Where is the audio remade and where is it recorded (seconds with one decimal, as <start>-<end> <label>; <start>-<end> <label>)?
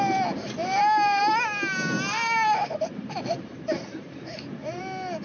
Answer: 0.0-0.4 recorded; 0.4-1.2 remade; 1.2-2.1 recorded; 2.1-4.8 remade; 4.8-5.2 recorded